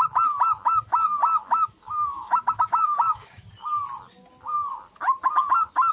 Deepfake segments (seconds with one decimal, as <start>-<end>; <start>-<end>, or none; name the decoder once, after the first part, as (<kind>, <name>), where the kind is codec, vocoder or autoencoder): 1.2-3.5 (autoencoder, DAC-VAE)